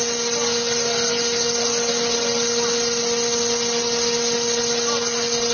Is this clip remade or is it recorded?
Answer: recorded